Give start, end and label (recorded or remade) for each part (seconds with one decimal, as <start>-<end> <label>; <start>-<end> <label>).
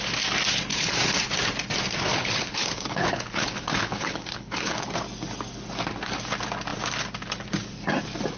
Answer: 0.0-0.7 recorded; 0.7-1.3 remade; 1.3-2.1 recorded; 2.1-4.9 remade; 4.9-8.4 recorded